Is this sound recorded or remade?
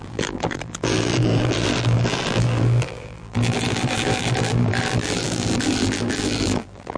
remade